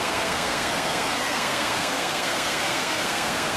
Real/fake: fake